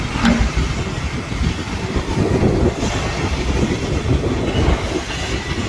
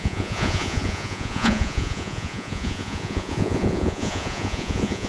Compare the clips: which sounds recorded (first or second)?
first